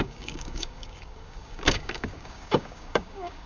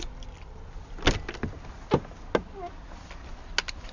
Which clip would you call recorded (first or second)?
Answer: second